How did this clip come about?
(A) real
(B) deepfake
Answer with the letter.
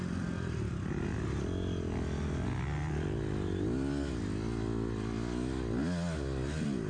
A